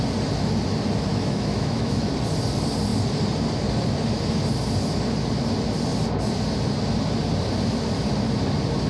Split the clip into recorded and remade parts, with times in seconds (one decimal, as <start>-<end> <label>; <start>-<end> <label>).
0.0-1.1 recorded; 1.1-2.1 remade; 2.1-8.9 recorded